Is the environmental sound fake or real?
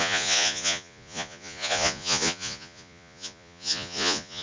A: fake